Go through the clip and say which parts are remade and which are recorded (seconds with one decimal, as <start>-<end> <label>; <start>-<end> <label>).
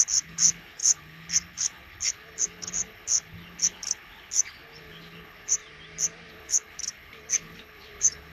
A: 0.0-5.6 remade; 5.6-6.3 recorded; 6.3-8.3 remade